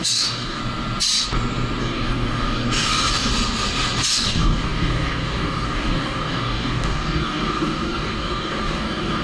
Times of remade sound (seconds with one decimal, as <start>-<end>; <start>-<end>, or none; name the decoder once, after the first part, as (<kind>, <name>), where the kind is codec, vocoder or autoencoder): 0.0-0.6 (codec, DAC); 1.8-3.3; 4.1-9.2